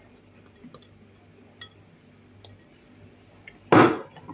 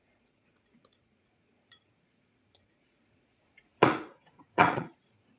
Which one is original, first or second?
first